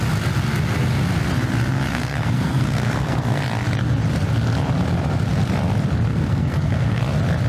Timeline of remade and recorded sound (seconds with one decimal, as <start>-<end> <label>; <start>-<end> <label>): 0.0-1.9 recorded; 1.9-3.4 remade; 3.4-6.1 recorded; 6.1-7.0 remade; 7.0-7.5 recorded

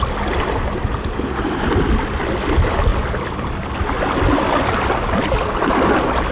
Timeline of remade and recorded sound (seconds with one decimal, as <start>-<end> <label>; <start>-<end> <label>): 0.0-6.3 recorded

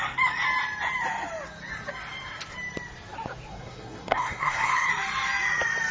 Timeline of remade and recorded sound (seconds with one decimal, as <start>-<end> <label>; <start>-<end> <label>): 0.0-3.5 recorded; 3.5-4.9 remade; 4.9-5.9 recorded

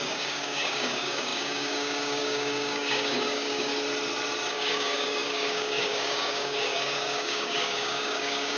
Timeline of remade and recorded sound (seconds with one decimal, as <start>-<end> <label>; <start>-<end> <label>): 0.0-3.7 remade; 3.7-4.5 recorded; 4.5-8.6 remade

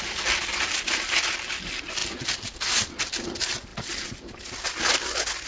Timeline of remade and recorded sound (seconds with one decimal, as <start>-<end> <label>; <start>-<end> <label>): 0.0-5.5 recorded

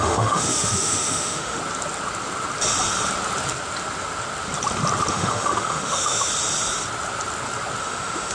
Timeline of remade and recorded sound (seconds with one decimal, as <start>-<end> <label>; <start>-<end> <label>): 0.0-1.6 remade; 1.6-5.1 recorded; 5.1-6.3 remade; 6.3-7.8 recorded; 7.8-8.3 remade